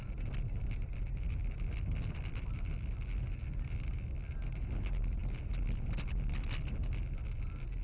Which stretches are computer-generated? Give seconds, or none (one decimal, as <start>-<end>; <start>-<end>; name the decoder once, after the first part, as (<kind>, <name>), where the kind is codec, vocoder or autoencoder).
none